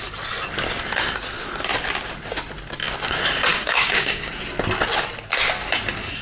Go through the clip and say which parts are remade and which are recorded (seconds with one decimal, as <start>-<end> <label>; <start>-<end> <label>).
0.0-3.5 recorded; 3.5-4.3 remade; 4.3-6.2 recorded